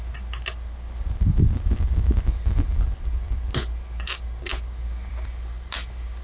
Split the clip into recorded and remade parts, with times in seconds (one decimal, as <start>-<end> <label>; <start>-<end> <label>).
0.0-6.2 recorded